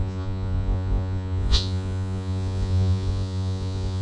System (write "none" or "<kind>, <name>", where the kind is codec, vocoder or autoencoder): vocoder, Vocos